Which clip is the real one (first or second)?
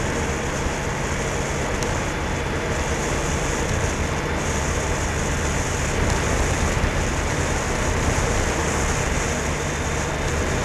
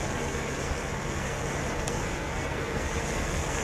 first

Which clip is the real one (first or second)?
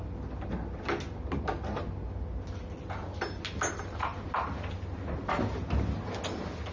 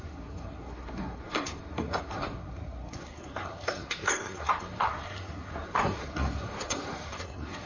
first